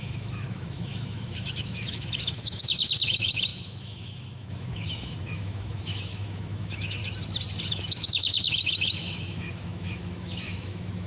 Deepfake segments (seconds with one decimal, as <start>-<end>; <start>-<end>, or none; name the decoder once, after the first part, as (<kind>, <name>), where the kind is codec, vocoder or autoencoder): 0.0-7.0 (autoencoder, DAC-VAE); 7.6-11.1